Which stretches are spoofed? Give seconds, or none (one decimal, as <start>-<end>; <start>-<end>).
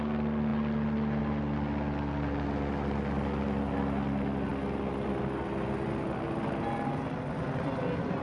none